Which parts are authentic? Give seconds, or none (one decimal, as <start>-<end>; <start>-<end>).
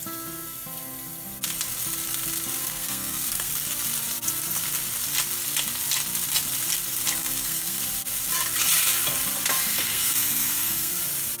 0.0-2.6; 3.5-7.2; 7.8-9.7; 11.0-11.4